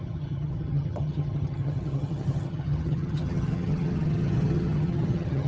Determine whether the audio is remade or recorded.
remade